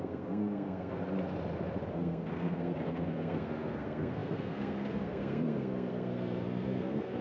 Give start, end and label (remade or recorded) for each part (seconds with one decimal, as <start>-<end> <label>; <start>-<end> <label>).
0.0-1.0 remade; 1.0-1.9 recorded; 1.9-7.2 remade